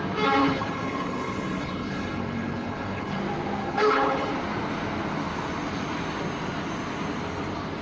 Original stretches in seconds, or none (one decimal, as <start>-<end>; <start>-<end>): 0.0-0.4; 3.2-3.6; 4.3-7.8